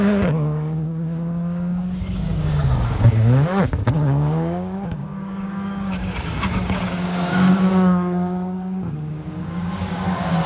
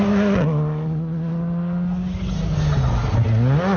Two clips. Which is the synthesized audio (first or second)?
first